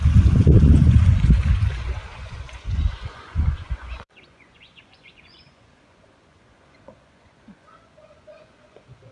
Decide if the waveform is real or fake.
fake